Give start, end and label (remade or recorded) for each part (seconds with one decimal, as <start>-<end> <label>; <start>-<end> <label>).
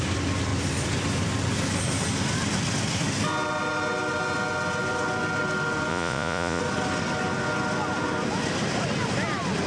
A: 0.0-5.9 recorded; 5.9-6.6 remade; 6.6-9.7 recorded